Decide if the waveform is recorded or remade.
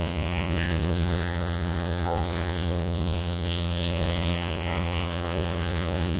remade